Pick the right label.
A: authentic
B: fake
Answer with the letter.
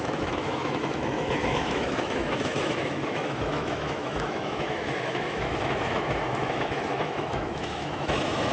B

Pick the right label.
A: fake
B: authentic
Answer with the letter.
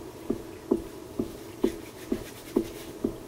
B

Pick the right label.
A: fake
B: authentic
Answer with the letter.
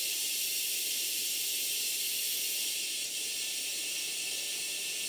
B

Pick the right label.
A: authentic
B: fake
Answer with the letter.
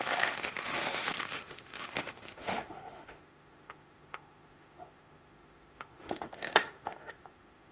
B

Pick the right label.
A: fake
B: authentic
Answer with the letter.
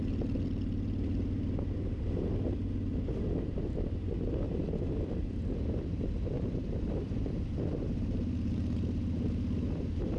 B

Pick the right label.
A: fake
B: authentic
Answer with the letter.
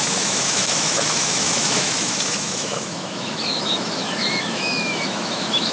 A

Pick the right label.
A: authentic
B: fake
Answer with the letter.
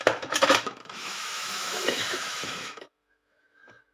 B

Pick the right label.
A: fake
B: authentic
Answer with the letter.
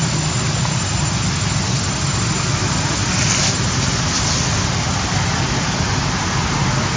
B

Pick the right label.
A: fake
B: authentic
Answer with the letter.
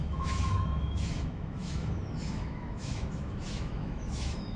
A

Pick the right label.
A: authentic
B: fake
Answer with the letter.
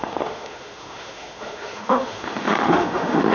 B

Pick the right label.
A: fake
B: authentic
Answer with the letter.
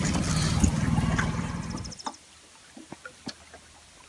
B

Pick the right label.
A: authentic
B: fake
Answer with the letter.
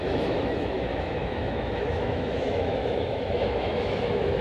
B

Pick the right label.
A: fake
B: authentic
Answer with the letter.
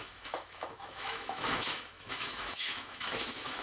A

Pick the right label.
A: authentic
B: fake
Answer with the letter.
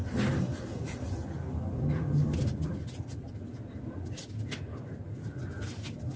A